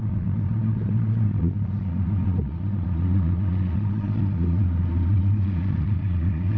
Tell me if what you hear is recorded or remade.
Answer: remade